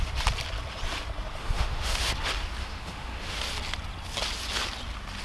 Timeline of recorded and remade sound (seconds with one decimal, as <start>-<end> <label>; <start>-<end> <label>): 0.0-1.4 recorded; 1.4-2.1 remade; 2.1-2.6 recorded; 2.6-3.4 remade; 3.4-5.2 recorded